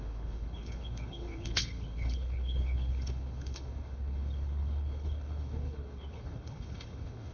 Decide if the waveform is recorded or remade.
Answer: remade